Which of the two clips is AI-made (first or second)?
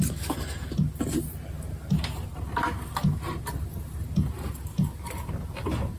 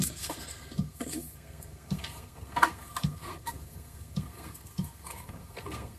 second